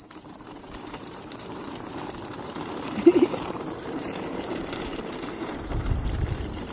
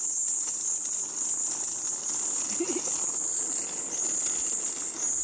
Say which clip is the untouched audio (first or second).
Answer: second